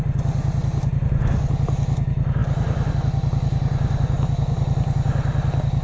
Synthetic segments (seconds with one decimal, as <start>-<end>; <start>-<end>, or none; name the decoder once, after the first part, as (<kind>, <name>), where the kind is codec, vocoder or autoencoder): none

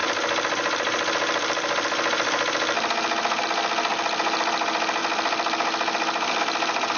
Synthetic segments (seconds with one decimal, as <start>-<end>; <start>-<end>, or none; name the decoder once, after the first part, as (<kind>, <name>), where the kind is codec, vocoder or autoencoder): none

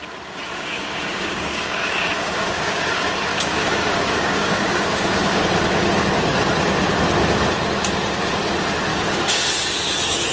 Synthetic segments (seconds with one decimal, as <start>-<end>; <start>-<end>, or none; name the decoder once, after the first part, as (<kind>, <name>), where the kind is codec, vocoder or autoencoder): 0.5-2.8 (codec, DAC); 3.3-5.4; 8.9-9.4

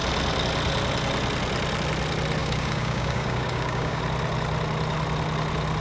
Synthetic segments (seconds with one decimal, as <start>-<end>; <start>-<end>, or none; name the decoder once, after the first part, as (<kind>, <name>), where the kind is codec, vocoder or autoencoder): 2.4-4.0 (codec, DAC)

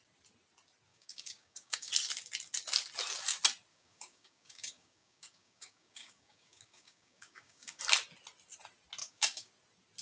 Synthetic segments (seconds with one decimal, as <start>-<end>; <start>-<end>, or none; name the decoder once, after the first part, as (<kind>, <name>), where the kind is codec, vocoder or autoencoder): 0.9-1.9 (codec, DAC); 3.7-7.8; 9.0-9.5